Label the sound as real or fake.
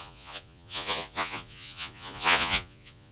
fake